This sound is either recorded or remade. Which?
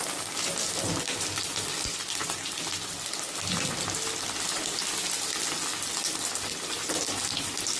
recorded